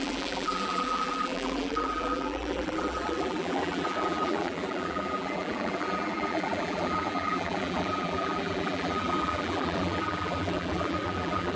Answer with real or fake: fake